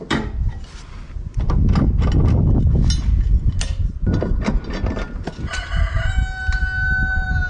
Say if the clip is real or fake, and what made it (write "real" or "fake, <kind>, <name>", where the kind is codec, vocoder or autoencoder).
real